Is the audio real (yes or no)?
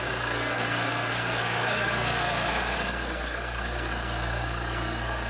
no